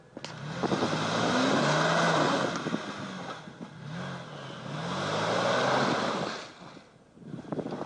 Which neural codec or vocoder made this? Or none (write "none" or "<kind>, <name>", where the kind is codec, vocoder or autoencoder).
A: none